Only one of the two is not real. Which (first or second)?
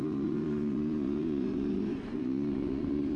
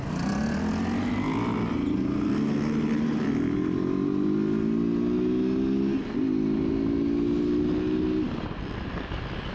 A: first